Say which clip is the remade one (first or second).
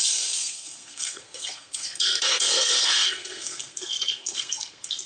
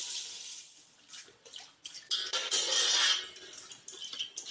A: first